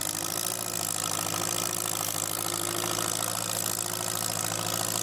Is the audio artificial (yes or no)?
no